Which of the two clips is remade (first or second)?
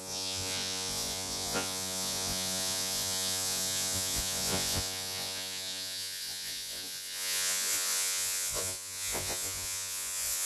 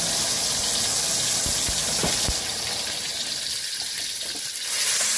first